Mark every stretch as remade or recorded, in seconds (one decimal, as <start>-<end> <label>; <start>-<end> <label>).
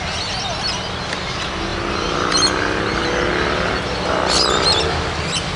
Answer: 0.0-5.6 recorded